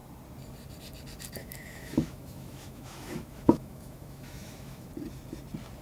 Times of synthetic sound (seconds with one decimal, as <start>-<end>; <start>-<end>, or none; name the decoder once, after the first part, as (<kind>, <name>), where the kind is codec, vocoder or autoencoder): 1.4-4.9 (autoencoder, DAC-VAE)